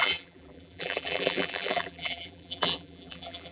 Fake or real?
fake